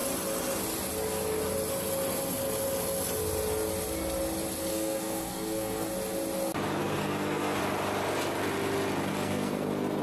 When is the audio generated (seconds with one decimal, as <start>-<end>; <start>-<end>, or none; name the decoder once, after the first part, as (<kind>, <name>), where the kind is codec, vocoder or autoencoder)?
4.7-5.9 (codec, SNAC); 6.8-7.6; 9.1-10.0